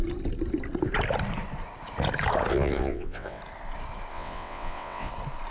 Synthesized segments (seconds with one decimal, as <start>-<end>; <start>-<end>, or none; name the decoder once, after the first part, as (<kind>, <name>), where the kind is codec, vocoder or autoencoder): 2.5-3.4 (vocoder, WaveNeXt); 4.1-5.1